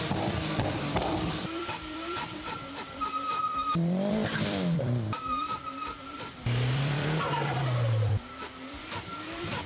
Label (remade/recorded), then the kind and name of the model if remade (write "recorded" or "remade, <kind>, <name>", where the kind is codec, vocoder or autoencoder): remade, vocoder, BigVGAN v2